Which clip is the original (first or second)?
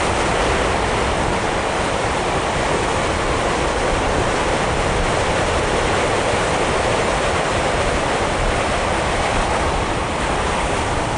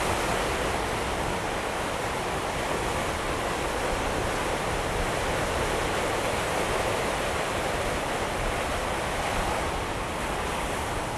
second